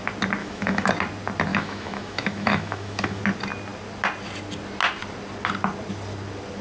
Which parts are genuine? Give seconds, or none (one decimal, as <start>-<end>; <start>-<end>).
0.0-0.4; 0.9-1.5; 3.2-6.6